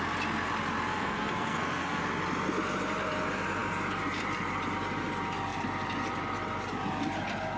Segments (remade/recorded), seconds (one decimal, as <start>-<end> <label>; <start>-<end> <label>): 0.0-0.9 recorded; 0.9-2.0 remade; 2.0-7.6 recorded